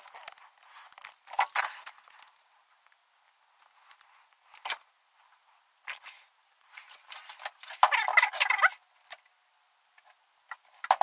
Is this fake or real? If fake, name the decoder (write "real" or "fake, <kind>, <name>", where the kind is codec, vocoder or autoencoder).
real